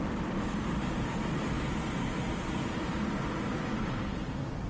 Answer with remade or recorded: remade